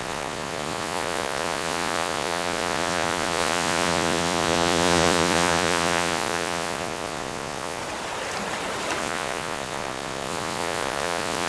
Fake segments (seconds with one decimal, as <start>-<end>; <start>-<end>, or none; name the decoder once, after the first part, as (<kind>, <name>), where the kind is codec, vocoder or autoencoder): 0.0-7.8 (vocoder, Vocos); 9.0-11.5